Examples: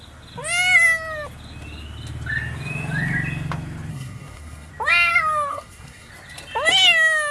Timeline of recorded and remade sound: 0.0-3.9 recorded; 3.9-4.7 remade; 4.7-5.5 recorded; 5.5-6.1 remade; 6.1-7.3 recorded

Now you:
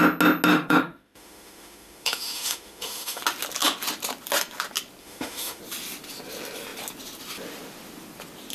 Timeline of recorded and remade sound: 0.0-0.5 recorded; 0.5-3.2 remade; 3.2-5.0 recorded; 5.0-5.6 remade; 5.6-8.5 recorded

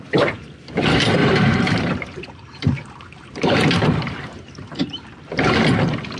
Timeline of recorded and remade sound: 0.0-1.2 recorded; 1.2-4.8 remade; 4.8-6.2 recorded

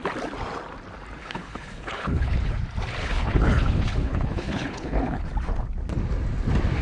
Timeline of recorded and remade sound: 0.0-1.2 recorded; 1.2-2.6 remade; 2.6-3.0 recorded; 3.0-5.3 remade; 5.3-6.8 recorded

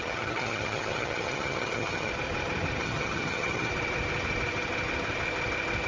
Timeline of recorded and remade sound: 0.0-2.1 remade; 2.1-2.8 recorded; 2.8-3.7 remade; 3.7-5.9 recorded